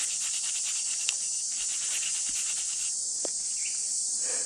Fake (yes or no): yes